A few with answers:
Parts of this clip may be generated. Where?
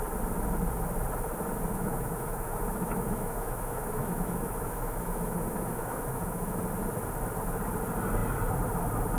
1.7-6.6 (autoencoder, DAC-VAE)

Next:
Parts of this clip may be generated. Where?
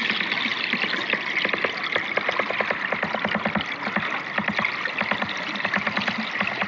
none